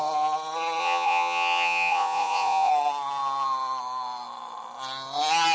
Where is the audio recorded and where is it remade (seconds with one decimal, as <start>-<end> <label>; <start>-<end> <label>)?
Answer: 0.0-0.8 recorded; 0.8-2.7 remade; 2.7-5.5 recorded